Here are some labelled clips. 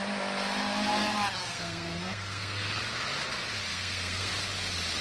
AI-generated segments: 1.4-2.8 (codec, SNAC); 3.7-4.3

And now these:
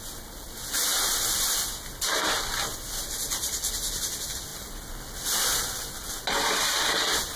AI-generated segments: none